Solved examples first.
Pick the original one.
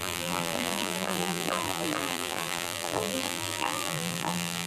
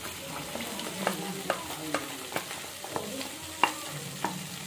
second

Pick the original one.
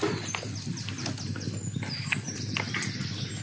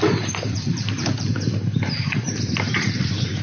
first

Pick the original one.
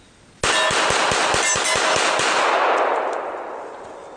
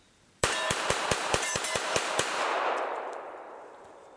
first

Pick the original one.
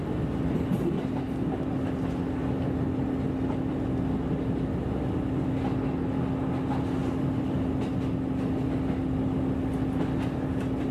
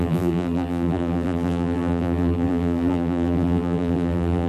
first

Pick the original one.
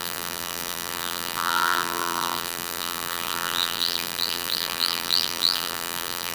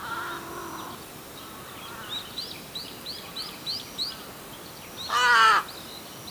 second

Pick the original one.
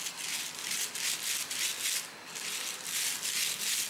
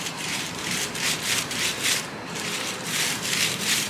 first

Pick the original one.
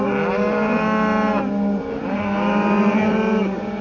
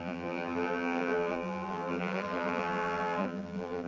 first